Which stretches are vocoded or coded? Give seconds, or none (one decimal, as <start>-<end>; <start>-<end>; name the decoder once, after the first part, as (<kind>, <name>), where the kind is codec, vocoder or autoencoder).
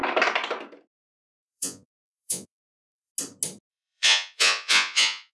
1.2-3.1 (vocoder, Vocos); 3.7-5.3